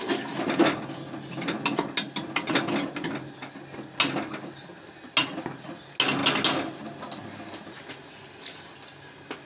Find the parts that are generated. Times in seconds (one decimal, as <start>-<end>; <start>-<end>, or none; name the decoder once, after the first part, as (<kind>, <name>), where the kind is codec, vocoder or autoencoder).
none